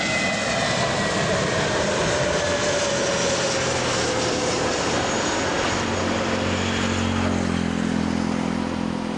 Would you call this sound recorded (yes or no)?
yes